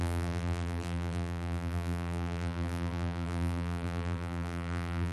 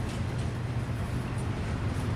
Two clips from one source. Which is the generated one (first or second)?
first